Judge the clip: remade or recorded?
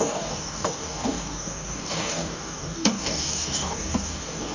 remade